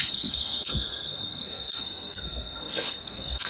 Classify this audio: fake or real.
fake